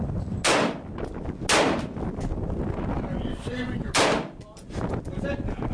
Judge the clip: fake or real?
real